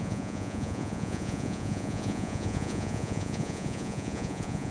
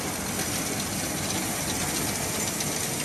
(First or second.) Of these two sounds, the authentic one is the second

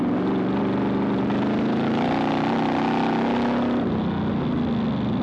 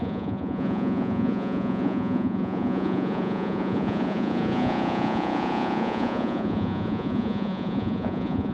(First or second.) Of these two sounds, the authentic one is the first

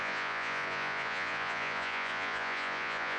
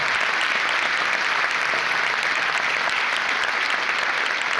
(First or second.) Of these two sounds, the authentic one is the second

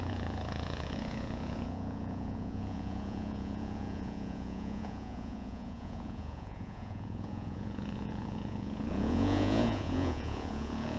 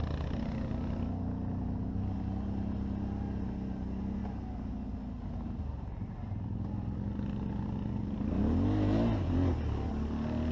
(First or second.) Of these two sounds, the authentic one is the second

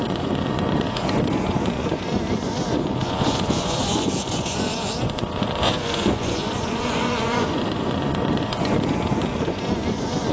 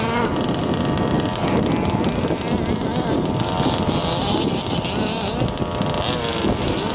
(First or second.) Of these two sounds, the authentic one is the second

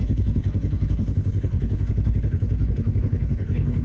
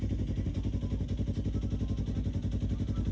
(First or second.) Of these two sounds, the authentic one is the second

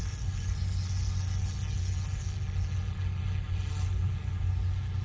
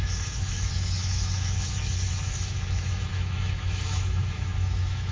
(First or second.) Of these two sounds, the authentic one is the first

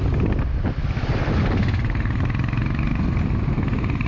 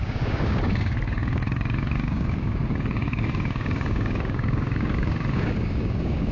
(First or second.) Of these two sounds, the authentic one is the first